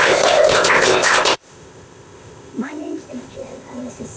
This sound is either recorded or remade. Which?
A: remade